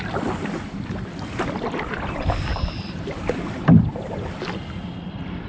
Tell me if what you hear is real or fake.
fake